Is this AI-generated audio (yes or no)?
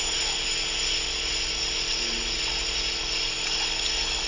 no